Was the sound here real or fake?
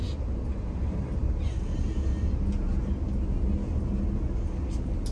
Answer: real